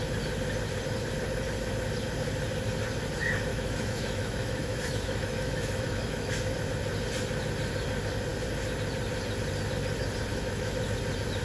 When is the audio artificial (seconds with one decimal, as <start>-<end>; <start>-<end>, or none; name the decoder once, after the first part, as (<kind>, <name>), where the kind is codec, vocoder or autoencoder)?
3.5-6.3 (autoencoder, DAC-VAE); 10.3-10.8